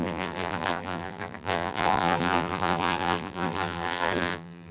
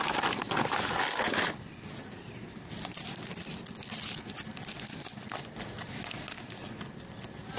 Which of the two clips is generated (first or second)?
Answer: first